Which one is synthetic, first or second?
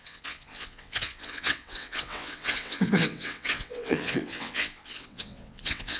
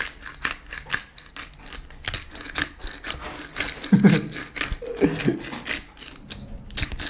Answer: first